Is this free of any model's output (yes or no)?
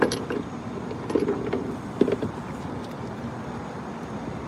yes